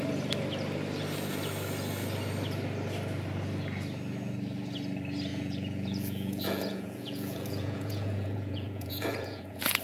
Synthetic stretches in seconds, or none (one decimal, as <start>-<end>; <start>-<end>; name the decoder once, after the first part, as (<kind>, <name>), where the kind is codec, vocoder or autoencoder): 5.3-9.8 (vocoder, Vocos)